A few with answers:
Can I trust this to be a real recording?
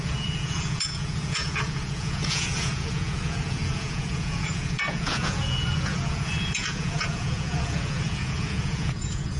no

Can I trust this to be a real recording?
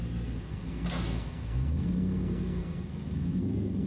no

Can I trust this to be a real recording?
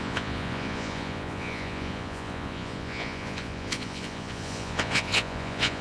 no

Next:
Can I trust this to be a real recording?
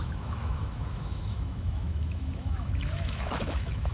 no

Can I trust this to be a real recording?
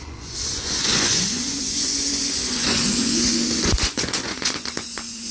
no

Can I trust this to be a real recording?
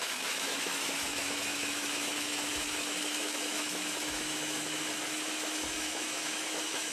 no